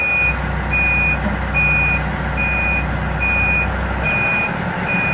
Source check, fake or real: real